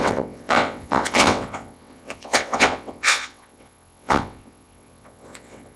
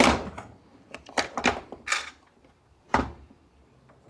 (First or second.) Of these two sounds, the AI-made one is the first